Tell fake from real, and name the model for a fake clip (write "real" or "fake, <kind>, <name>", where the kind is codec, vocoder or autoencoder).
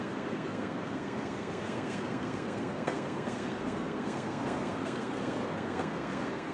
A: fake, codec, SNAC